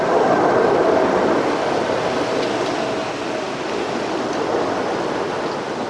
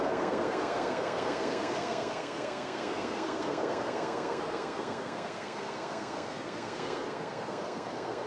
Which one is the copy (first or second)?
second